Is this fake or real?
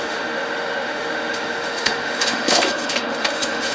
fake